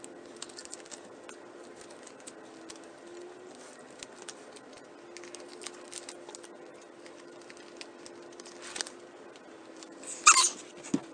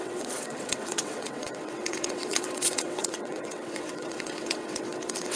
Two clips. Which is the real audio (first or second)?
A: first